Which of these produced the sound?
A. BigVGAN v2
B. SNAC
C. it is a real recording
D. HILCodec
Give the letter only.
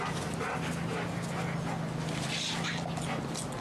C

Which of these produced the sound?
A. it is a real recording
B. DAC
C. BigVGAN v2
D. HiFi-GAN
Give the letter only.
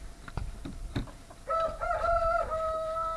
C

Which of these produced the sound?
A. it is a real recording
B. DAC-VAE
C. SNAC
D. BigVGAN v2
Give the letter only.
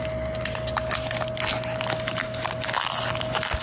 A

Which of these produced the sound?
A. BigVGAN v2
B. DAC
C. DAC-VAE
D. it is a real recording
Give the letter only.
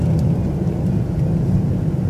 D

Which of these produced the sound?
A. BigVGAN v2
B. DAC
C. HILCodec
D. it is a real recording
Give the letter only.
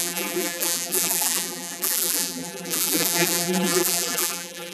A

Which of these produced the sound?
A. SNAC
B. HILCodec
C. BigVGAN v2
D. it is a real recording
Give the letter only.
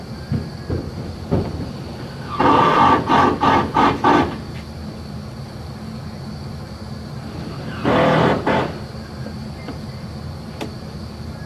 C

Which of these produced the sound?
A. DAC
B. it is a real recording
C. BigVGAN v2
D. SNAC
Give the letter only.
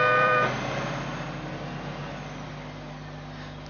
C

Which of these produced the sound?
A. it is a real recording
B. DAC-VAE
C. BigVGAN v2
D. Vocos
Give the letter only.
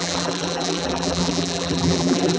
C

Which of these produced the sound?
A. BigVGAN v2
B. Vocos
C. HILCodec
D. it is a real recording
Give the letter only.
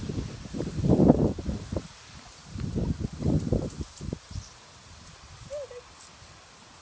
D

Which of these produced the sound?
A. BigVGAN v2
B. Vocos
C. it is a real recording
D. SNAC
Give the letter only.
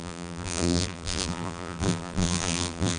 A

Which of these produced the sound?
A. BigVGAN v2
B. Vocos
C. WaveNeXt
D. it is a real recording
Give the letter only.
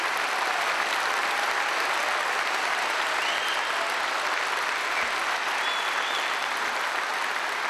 A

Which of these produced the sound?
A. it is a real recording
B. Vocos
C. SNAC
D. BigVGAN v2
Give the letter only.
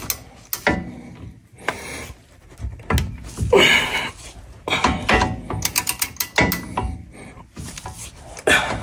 A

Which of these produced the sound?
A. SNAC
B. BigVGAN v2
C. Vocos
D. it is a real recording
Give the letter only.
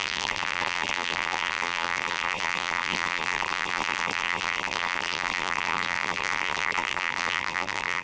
B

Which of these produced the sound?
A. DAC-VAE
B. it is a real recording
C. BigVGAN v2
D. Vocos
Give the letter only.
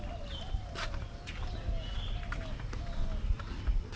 B